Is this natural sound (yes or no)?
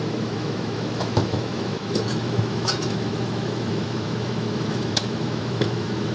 no